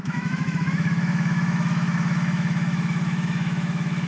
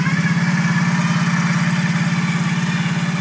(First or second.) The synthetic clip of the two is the first